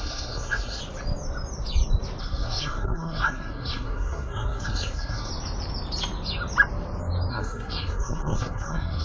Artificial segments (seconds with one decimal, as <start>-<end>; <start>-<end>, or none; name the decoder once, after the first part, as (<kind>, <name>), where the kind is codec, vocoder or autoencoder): 0.0-0.8 (codec, SNAC); 2.2-5.3; 7.3-9.0